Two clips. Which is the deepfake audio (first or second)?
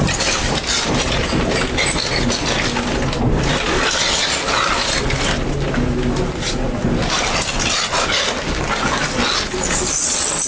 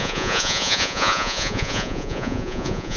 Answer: second